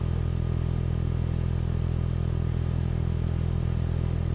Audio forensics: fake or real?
real